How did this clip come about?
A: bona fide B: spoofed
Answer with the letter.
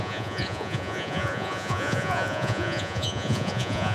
B